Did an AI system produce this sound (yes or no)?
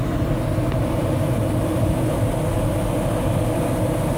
no